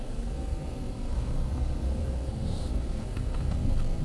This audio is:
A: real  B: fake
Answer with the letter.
B